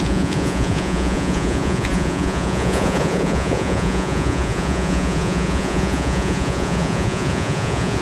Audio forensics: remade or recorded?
remade